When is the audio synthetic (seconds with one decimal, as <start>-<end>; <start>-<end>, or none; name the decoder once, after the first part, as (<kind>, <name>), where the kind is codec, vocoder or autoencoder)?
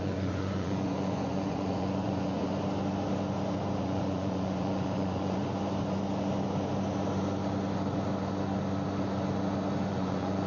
0.0-2.5 (vocoder, Vocos); 3.8-5.4; 9.9-10.5